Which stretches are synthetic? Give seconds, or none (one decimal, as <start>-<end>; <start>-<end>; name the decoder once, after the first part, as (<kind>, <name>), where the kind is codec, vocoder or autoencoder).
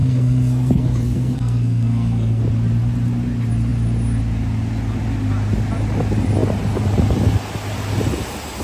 0.0-2.4 (codec, SNAC)